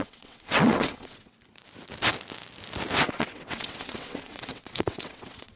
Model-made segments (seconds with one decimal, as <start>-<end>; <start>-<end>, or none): 0.0-1.3; 3.0-5.6